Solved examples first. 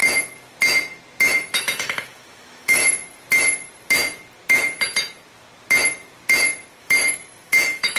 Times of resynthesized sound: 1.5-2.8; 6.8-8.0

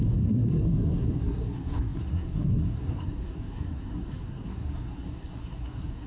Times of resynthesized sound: 0.0-6.1

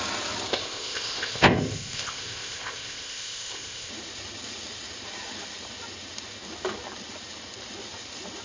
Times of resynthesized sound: 0.5-3.9